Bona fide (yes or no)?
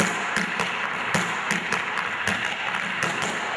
yes